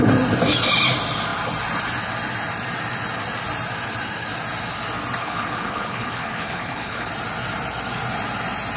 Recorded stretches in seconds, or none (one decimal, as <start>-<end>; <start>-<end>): 0.0-5.2; 7.1-8.8